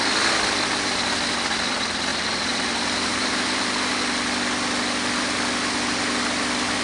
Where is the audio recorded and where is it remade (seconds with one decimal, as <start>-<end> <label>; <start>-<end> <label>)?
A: 0.0-2.1 recorded; 2.1-2.7 remade; 2.7-3.1 recorded; 3.1-3.9 remade; 3.9-6.8 recorded